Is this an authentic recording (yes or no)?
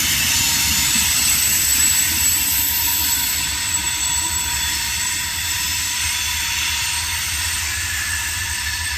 no